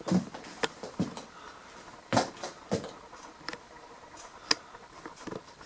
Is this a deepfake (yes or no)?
no